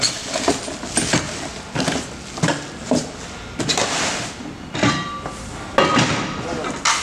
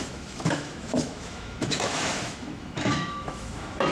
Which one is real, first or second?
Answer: first